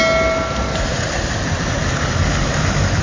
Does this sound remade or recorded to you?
recorded